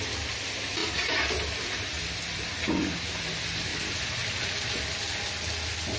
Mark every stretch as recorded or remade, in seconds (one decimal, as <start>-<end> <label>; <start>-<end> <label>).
0.0-0.8 recorded; 0.8-2.9 remade; 2.9-3.7 recorded; 3.7-4.3 remade; 4.3-6.0 recorded